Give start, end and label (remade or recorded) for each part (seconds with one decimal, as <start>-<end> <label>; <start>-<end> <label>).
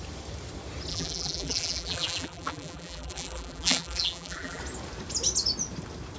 0.0-0.9 recorded; 0.9-4.6 remade; 4.6-6.2 recorded